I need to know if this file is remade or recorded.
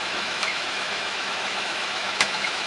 remade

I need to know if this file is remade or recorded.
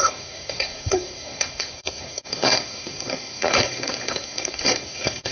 remade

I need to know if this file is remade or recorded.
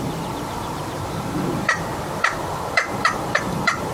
remade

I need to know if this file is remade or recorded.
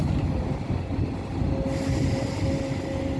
recorded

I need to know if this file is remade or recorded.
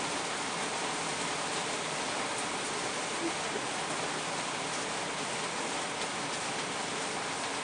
recorded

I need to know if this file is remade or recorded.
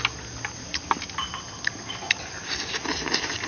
recorded